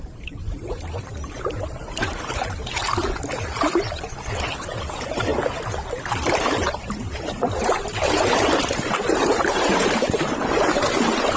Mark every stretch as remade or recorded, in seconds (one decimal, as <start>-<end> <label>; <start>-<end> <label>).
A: 0.0-2.8 remade; 2.8-4.6 recorded; 4.6-5.3 remade; 5.3-6.1 recorded; 6.1-11.4 remade